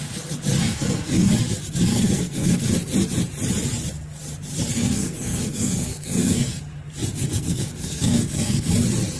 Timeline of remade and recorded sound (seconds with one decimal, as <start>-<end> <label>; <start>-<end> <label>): 0.0-0.6 recorded; 0.6-1.3 remade; 1.3-1.9 recorded; 1.9-2.7 remade; 2.7-4.7 recorded; 4.7-6.6 remade; 6.6-7.2 recorded; 7.2-8.7 remade; 8.7-9.2 recorded